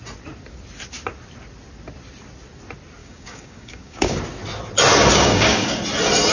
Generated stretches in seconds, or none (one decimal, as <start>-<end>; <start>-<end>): 3.0-4.2; 5.1-5.8